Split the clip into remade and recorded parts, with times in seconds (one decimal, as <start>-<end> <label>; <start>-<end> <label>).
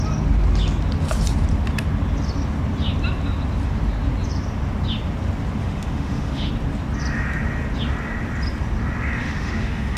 0.0-5.6 recorded; 5.6-6.5 remade; 6.5-9.2 recorded; 9.2-10.0 remade